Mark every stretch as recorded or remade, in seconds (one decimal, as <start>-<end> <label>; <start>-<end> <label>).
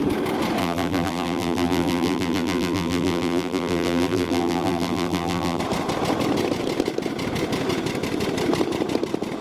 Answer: 0.0-0.6 recorded; 0.6-5.6 remade; 5.6-9.4 recorded